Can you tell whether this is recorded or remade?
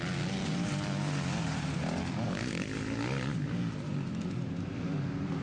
recorded